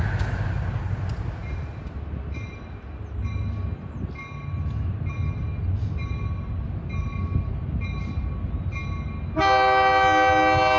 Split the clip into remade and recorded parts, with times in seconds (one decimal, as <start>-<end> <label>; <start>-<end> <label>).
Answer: 0.0-10.8 recorded